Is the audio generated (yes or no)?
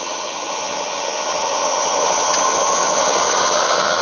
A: yes